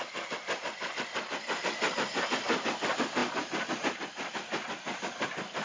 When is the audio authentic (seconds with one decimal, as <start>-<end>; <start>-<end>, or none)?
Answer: 0.0-5.6